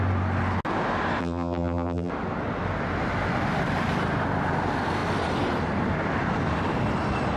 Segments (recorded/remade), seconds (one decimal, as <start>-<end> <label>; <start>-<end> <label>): 0.0-1.2 recorded; 1.2-2.1 remade; 2.1-7.4 recorded